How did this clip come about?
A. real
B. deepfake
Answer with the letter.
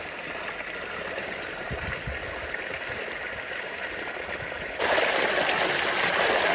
A